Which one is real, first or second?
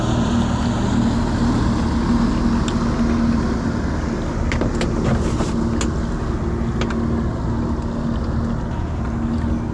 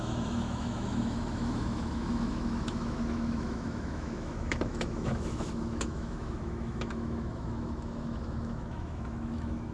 first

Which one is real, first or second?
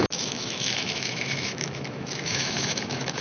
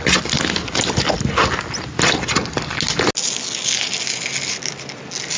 second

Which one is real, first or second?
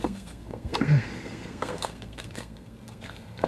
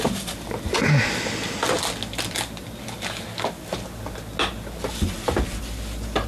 second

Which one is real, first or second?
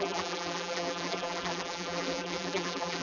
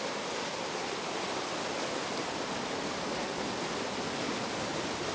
second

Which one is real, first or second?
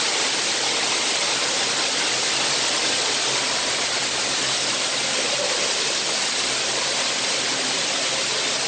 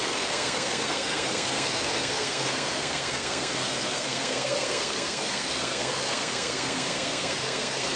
first